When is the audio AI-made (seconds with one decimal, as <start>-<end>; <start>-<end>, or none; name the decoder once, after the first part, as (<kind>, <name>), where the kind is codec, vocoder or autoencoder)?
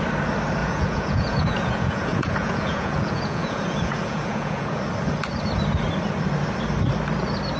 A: 0.6-4.8 (vocoder, Vocos)